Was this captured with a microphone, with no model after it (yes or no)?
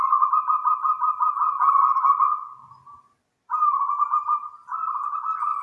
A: yes